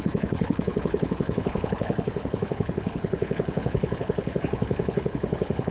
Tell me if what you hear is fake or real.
fake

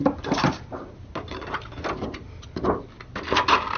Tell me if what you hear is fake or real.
real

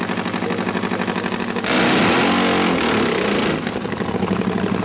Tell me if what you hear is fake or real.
real